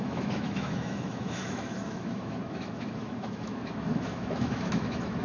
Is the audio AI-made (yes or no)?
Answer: yes